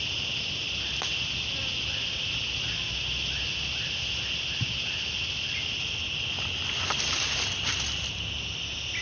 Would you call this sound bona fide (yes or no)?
yes